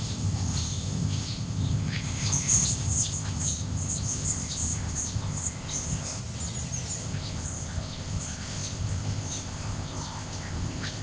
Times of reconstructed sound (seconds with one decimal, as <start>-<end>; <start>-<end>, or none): 0.0-6.2; 7.0-11.0